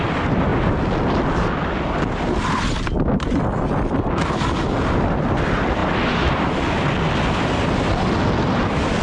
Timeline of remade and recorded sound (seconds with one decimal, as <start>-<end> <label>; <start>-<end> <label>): 0.0-9.0 recorded